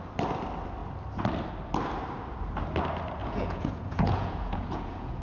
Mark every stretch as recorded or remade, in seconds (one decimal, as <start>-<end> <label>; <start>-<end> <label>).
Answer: 0.0-3.2 recorded; 3.2-5.2 remade